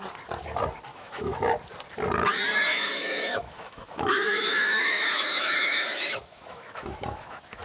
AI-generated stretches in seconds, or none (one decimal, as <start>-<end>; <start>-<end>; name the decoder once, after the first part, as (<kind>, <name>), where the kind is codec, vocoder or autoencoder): 0.9-1.5 (autoencoder, DAC-VAE); 2.7-7.6